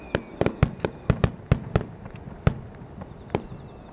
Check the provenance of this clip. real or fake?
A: real